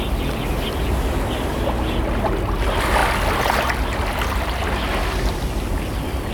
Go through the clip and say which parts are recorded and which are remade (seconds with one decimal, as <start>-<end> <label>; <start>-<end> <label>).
0.0-6.3 recorded